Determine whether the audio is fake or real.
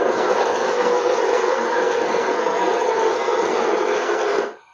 fake